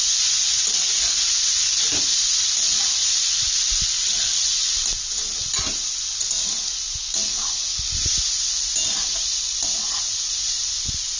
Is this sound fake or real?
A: real